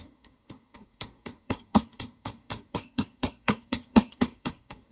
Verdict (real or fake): fake